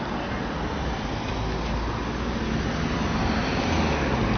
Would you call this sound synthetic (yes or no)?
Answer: no